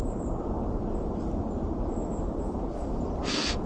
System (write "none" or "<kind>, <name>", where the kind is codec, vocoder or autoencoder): none